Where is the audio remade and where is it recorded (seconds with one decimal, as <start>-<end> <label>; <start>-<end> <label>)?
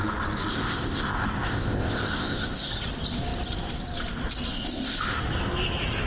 0.0-0.5 recorded; 0.5-2.7 remade; 2.7-4.5 recorded; 4.5-5.2 remade; 5.2-6.1 recorded